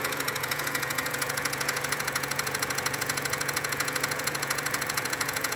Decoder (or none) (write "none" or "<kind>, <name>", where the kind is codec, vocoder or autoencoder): vocoder, Vocos